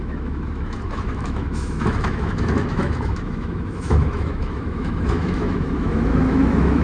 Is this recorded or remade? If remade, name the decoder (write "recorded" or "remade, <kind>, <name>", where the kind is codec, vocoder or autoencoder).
remade, autoencoder, DAC-VAE